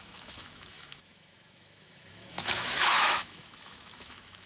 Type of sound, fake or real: fake